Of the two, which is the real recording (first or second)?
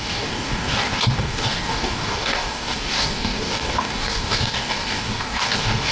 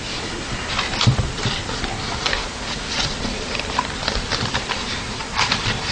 second